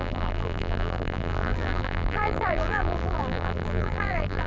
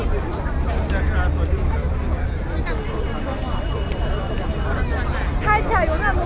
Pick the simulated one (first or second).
first